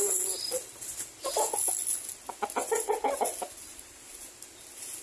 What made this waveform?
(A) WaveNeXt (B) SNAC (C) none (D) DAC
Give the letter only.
C